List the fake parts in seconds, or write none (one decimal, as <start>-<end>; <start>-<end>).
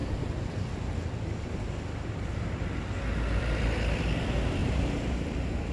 4.6-5.7